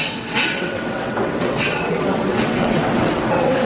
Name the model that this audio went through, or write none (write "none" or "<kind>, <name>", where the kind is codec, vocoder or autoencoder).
vocoder, WaveNeXt